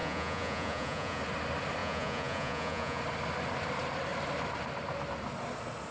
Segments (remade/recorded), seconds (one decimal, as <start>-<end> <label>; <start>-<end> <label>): 0.0-1.2 remade; 1.2-1.8 recorded; 1.8-3.0 remade; 3.0-5.9 recorded

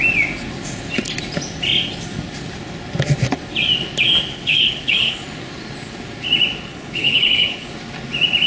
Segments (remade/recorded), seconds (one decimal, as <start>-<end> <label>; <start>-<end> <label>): 0.0-4.3 recorded; 4.3-5.2 remade; 5.2-6.7 recorded; 6.7-7.7 remade; 7.7-8.5 recorded

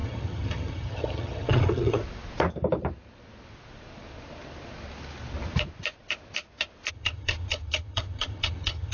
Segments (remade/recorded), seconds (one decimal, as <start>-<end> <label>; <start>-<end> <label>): 0.0-2.0 remade; 2.0-6.9 recorded; 6.9-8.9 remade

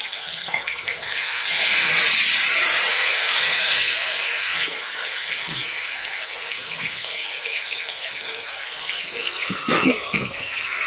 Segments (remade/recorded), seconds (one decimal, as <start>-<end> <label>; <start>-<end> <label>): 0.0-1.9 remade; 1.9-2.9 recorded; 2.9-10.9 remade

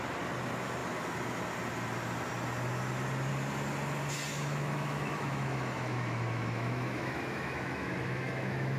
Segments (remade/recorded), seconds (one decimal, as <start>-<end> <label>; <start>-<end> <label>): 0.0-4.3 recorded; 4.3-8.8 remade